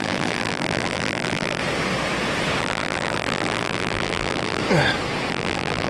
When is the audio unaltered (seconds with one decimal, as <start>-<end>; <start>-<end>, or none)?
1.6-2.6; 4.6-5.3